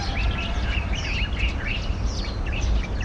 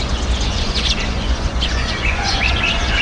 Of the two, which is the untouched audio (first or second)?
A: first